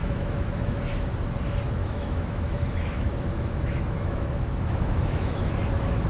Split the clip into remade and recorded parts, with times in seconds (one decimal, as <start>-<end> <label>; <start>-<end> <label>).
0.0-0.8 remade; 0.8-1.8 recorded; 1.8-5.5 remade; 5.5-6.1 recorded

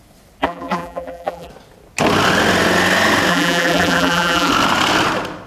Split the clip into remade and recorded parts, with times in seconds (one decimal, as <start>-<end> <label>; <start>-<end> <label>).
0.0-0.4 recorded; 0.4-1.5 remade; 1.5-3.3 recorded; 3.3-4.5 remade; 4.5-5.5 recorded

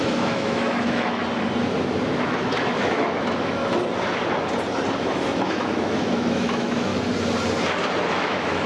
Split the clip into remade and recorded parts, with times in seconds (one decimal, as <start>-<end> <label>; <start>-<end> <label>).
0.0-1.2 remade; 1.2-2.2 recorded; 2.2-3.6 remade; 3.6-5.0 recorded; 5.0-6.9 remade; 6.9-8.1 recorded; 8.1-8.7 remade

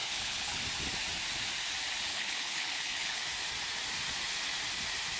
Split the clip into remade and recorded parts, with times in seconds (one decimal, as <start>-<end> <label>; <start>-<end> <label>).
0.0-0.6 remade; 0.6-2.1 recorded; 2.1-3.2 remade; 3.2-5.2 recorded